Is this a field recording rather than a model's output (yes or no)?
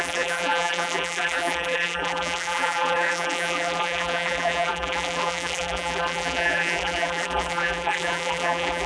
no